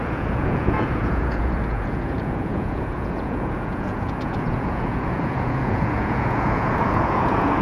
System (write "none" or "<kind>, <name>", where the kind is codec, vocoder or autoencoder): vocoder, Vocos